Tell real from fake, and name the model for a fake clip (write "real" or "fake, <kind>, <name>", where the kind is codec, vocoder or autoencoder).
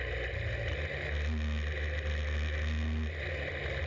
real